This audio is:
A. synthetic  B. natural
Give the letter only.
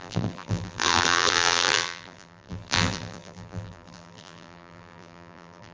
A